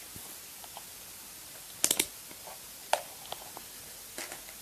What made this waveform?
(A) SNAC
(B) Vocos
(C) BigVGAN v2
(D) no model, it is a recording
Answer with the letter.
D